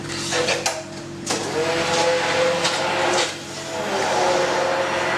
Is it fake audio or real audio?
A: real